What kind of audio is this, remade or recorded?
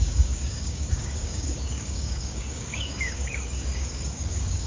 remade